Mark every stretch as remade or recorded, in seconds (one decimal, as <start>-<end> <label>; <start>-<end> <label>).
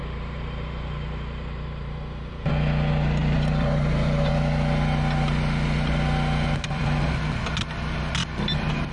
0.0-2.5 remade; 2.5-3.2 recorded; 3.2-4.3 remade; 4.3-8.9 recorded